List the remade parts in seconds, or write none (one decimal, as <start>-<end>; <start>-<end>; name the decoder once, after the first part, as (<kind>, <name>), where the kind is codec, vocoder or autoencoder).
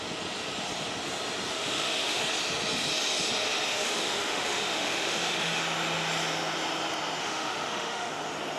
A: 1.5-2.2 (autoencoder, DAC-VAE); 3.7-5.6; 7.2-8.1